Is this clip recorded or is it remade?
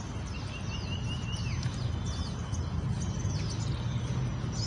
recorded